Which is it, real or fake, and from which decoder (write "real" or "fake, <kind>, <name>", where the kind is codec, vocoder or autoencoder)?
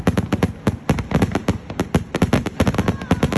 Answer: real